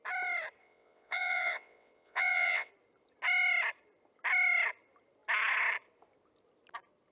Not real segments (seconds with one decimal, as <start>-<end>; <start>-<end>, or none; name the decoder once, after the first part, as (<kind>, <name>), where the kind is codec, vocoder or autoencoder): 0.6-2.7 (vocoder, WaveNeXt)